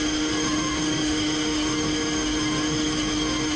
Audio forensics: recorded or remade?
remade